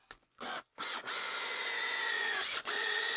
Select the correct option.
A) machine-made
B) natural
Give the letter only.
A